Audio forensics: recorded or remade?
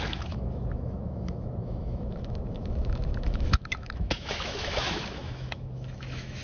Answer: remade